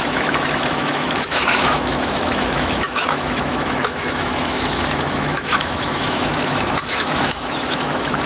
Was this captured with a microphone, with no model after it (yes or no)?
no